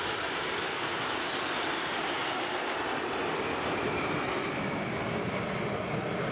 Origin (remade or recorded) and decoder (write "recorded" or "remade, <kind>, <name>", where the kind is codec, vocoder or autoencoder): recorded